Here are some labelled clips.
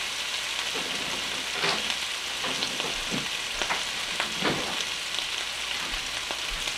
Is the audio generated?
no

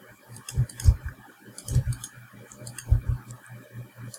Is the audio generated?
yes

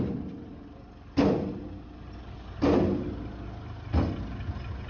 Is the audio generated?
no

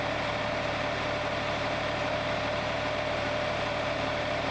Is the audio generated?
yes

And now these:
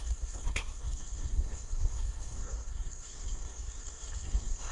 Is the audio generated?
yes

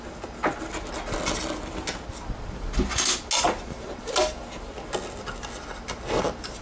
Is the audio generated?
no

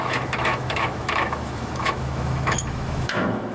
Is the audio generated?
yes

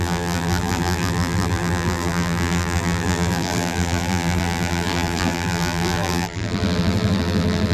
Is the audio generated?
yes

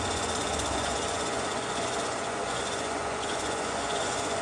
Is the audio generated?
yes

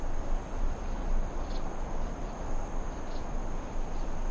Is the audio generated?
no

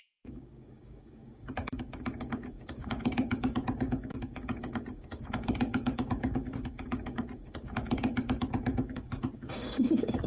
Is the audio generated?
yes